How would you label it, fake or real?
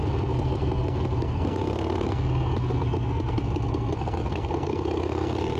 fake